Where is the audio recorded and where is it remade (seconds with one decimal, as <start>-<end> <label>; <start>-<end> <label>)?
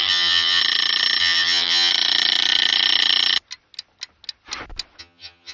0.0-0.6 remade; 0.6-1.2 recorded; 1.2-1.9 remade; 1.9-5.0 recorded; 5.0-5.5 remade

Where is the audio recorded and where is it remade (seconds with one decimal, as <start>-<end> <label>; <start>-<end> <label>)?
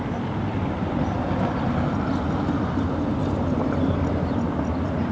0.0-5.1 recorded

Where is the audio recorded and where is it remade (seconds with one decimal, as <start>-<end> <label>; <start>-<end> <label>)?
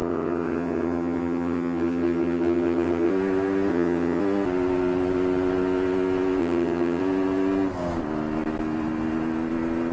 0.0-3.1 remade; 3.1-3.7 recorded; 3.7-4.2 remade; 4.2-6.4 recorded; 6.4-7.0 remade; 7.0-9.9 recorded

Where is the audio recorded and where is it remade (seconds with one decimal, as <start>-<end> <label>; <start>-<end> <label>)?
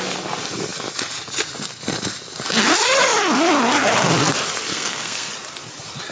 0.0-4.7 recorded; 4.7-5.3 remade; 5.3-6.1 recorded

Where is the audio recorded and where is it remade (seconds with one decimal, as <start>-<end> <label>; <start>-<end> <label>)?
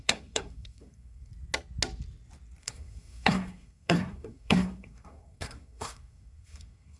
0.0-1.3 remade; 1.3-2.6 recorded; 2.6-7.0 remade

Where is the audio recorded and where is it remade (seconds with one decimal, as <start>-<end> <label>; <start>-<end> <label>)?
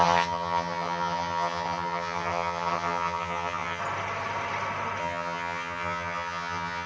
0.0-3.8 remade; 3.8-5.0 recorded; 5.0-6.9 remade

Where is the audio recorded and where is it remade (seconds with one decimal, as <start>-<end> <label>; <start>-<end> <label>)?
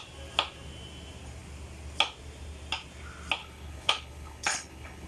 0.0-3.4 recorded; 3.4-5.1 remade